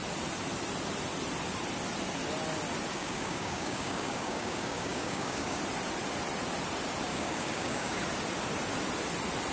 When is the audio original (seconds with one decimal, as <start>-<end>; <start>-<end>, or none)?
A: 0.0-2.9; 5.6-7.1; 8.0-9.5